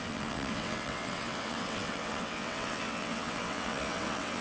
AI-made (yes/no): yes